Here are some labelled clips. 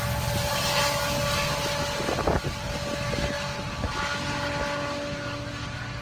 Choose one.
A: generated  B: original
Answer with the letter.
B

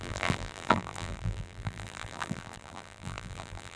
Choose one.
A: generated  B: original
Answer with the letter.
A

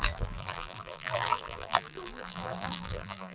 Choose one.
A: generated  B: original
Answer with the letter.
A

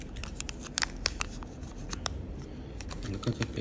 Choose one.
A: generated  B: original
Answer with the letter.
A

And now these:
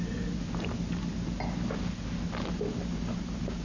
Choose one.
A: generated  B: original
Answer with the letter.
B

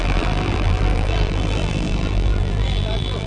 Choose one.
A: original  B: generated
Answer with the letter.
B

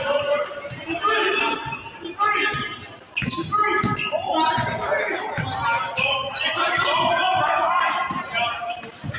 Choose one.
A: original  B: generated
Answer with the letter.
B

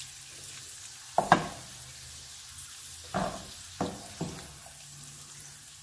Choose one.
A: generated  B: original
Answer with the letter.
B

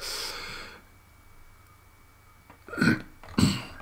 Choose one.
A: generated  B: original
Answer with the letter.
B